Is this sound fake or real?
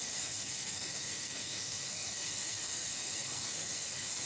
fake